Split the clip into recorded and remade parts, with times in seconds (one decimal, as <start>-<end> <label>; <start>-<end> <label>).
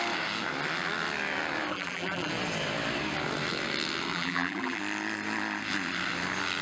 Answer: 0.0-1.7 recorded; 1.7-2.3 remade; 2.3-4.1 recorded; 4.1-4.8 remade; 4.8-6.6 recorded